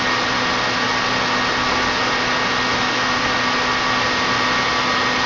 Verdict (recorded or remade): recorded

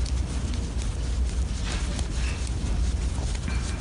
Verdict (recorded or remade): recorded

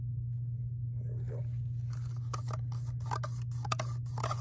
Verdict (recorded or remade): recorded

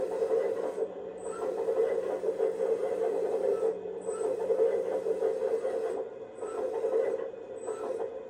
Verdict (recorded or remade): recorded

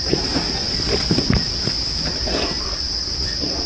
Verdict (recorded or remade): remade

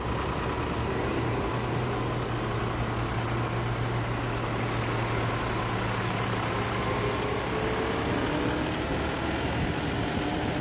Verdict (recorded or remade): recorded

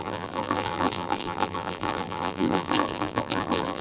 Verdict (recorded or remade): remade